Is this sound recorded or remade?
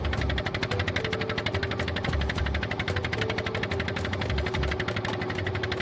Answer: recorded